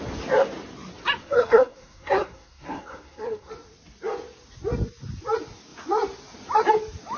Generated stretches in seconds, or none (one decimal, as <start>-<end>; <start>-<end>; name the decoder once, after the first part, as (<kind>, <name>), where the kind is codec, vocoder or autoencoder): 1.2-3.5 (codec, SNAC)